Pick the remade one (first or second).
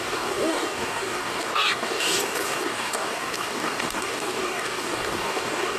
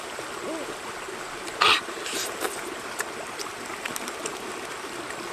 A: first